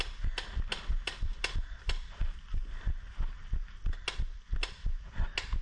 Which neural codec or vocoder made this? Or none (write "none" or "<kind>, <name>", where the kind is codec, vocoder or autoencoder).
none